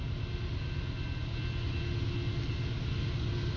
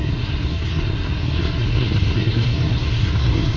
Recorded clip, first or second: first